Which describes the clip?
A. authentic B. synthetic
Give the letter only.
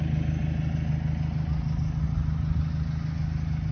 A